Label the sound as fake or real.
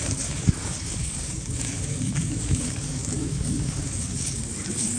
fake